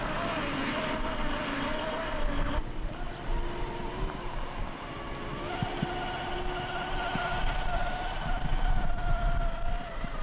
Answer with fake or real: real